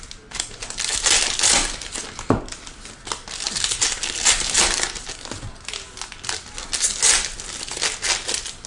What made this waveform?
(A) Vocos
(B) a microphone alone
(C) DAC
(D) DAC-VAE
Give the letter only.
B